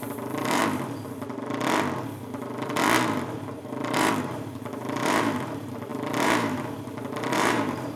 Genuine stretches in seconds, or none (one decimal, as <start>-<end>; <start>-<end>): 0.6-3.3